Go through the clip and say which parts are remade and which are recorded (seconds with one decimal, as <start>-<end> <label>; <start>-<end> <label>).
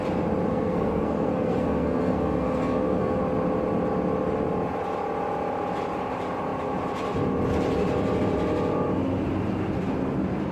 0.0-0.5 recorded; 0.5-3.2 remade; 3.2-10.5 recorded